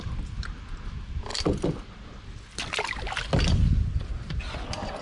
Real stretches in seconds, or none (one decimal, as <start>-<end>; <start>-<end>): 0.0-5.0